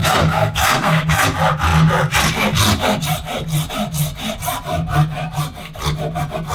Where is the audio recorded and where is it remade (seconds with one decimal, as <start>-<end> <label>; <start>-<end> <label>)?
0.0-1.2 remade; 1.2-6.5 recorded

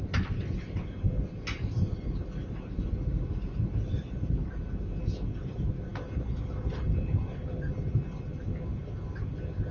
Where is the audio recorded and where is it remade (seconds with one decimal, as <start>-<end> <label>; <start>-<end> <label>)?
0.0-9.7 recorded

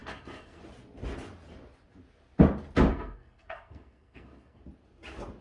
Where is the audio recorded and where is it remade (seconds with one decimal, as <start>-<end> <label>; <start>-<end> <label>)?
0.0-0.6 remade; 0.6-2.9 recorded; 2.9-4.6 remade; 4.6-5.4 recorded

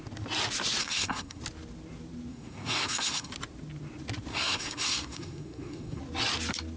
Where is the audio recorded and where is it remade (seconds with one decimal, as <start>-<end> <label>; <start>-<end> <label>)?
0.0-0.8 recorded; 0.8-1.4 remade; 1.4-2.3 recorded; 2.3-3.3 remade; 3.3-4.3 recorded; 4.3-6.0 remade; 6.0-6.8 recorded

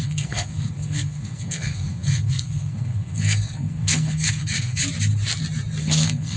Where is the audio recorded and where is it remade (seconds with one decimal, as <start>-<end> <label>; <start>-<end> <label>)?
0.0-4.8 remade; 4.8-5.8 recorded; 5.8-6.4 remade